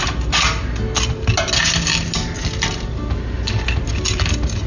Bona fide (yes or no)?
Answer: yes